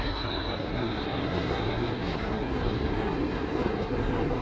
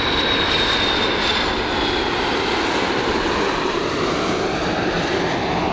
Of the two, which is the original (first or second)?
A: second